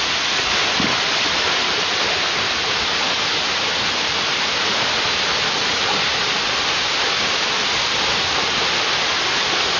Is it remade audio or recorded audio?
recorded